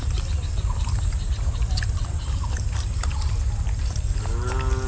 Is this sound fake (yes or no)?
no